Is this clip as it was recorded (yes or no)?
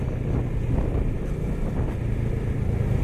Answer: yes